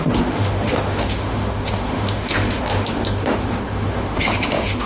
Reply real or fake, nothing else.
fake